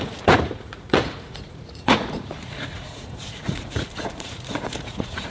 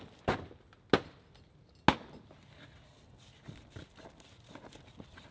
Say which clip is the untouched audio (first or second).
second